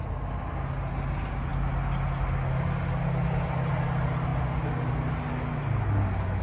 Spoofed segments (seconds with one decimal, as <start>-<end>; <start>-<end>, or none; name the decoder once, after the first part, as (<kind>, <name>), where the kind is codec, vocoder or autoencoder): none